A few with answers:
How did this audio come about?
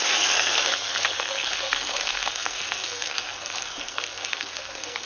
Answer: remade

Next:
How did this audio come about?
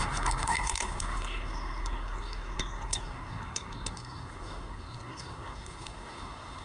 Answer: remade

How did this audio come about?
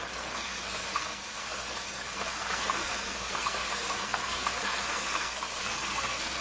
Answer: remade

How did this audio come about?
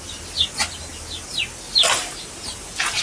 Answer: recorded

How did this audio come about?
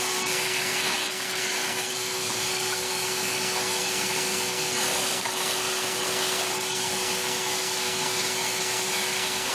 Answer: remade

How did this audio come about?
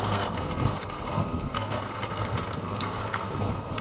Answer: remade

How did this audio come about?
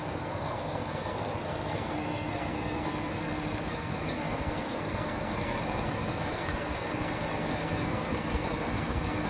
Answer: remade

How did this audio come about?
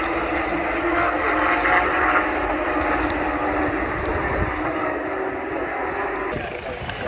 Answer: recorded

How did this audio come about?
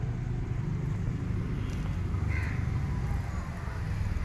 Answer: recorded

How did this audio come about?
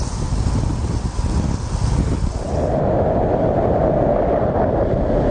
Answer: recorded